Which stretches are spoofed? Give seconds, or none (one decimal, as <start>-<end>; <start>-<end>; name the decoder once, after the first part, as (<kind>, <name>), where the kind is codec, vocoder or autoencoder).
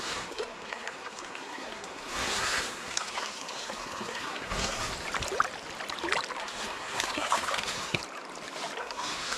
0.0-4.9 (codec, SNAC); 6.4-8.0; 8.8-9.4